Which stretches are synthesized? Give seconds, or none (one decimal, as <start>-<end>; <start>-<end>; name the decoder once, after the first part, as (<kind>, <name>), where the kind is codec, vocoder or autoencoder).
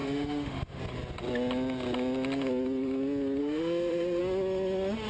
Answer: 0.0-0.8 (autoencoder, DAC-VAE); 3.4-4.2